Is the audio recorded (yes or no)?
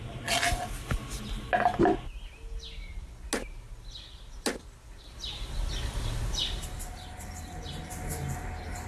yes